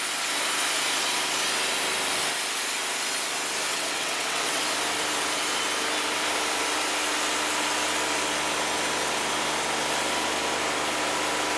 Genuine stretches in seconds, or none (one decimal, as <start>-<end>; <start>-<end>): 0.0-3.7; 4.6-11.6